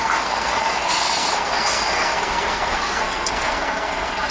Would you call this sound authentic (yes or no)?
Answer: no